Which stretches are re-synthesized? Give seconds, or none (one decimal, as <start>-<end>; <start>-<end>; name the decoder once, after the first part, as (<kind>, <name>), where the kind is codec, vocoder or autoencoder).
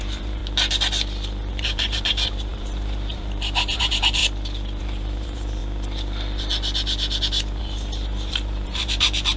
0.0-0.4 (vocoder, BigVGAN v2); 1.5-4.2; 4.8-5.6; 7.6-9.4